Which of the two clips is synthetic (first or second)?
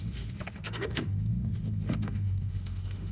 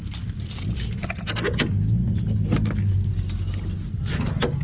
first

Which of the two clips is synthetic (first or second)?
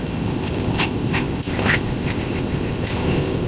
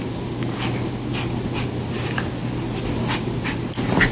first